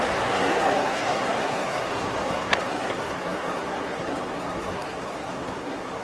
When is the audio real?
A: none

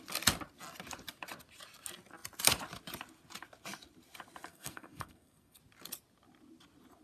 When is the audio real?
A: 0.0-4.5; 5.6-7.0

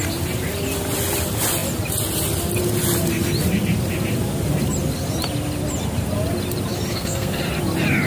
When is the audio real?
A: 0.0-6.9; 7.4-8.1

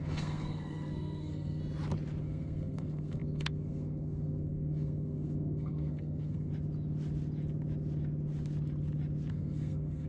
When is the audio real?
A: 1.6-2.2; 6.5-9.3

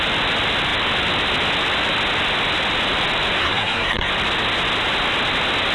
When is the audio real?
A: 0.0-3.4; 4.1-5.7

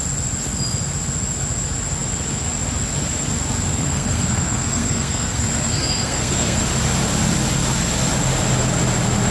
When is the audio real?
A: 0.0-3.7; 6.6-9.3

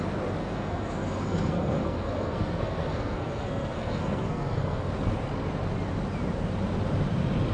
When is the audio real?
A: 0.0-0.4; 4.9-7.5